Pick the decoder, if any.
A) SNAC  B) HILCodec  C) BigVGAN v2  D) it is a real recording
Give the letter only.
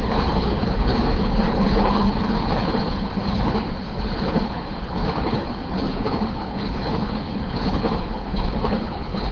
B